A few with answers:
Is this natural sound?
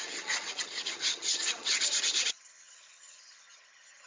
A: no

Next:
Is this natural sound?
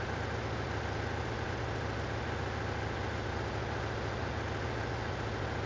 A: yes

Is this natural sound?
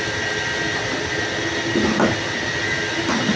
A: yes